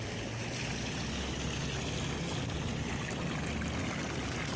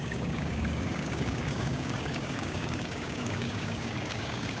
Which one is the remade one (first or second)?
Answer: second